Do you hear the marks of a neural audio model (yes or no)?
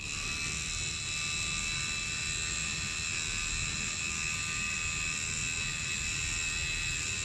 no